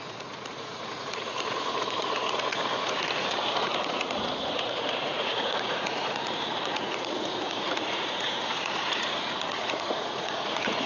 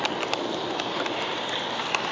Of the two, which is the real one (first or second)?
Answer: second